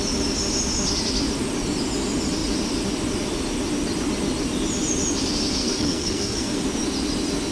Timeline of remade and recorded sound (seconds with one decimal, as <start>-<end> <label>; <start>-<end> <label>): 0.0-5.6 recorded; 5.6-6.6 remade; 6.6-7.5 recorded